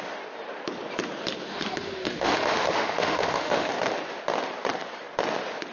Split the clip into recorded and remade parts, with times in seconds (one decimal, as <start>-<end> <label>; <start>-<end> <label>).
0.0-1.5 recorded; 1.5-3.7 remade; 3.7-5.7 recorded